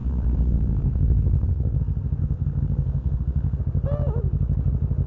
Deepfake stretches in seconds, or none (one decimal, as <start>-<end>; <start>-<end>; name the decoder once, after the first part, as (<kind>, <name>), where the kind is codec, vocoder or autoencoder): 0.0-1.8 (codec, SNAC); 2.2-3.6